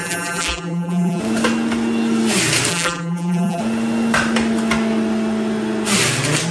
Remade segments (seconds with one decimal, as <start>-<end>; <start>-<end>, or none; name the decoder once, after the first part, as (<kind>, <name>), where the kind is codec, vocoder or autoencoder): 0.0-1.2 (vocoder, BigVGAN v2); 2.7-3.6